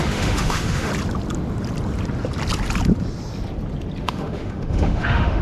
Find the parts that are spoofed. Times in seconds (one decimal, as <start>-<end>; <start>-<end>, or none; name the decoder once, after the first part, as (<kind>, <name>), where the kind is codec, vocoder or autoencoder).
0.0-0.9 (autoencoder, DAC-VAE); 4.0-5.4